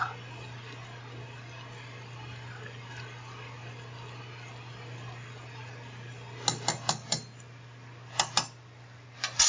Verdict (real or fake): real